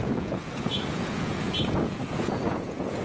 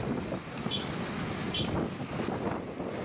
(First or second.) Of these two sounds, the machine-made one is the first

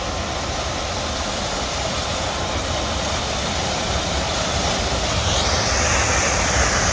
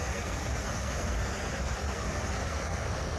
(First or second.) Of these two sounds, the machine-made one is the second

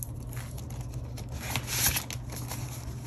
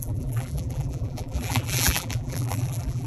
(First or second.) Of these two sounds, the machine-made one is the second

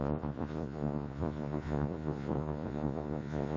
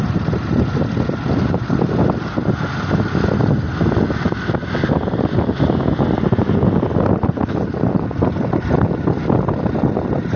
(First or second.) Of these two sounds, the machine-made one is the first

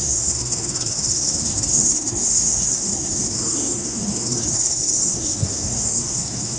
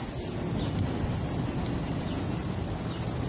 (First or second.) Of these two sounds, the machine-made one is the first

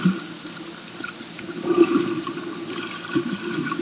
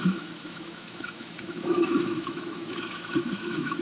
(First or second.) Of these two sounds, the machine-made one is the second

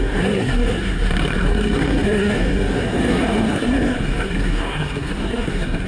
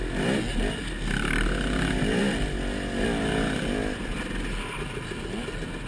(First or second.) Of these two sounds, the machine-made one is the first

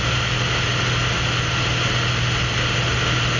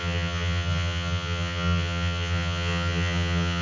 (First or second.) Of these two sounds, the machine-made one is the second